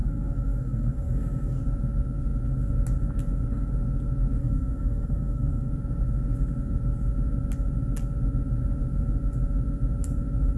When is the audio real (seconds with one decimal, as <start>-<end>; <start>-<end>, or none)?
1.6-4.4; 5.7-10.6